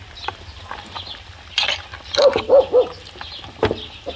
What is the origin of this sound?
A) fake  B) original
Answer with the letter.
B